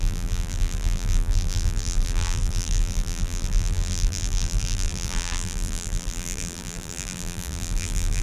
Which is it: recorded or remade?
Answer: remade